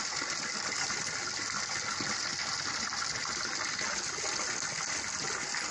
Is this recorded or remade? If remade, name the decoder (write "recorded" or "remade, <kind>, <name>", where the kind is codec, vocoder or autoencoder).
recorded